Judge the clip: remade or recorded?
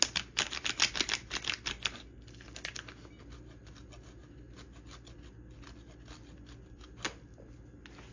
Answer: recorded